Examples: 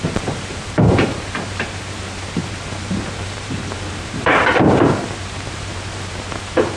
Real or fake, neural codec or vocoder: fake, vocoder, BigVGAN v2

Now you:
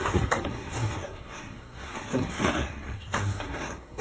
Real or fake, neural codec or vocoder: fake, codec, SNAC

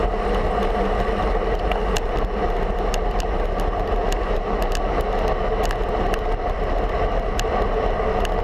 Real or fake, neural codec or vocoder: real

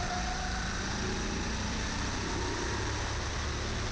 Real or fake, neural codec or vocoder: real